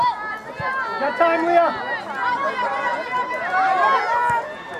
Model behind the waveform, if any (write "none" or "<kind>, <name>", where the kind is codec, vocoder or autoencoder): none